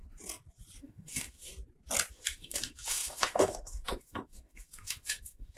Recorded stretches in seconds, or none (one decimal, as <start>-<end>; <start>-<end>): 0.0-0.8; 1.5-2.1